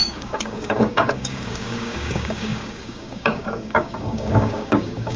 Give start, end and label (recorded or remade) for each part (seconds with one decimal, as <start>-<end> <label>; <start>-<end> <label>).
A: 0.0-5.2 remade